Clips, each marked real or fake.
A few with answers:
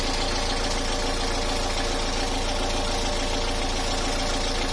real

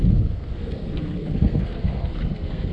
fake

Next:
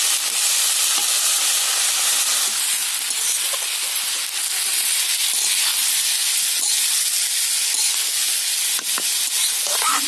real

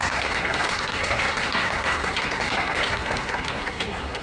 fake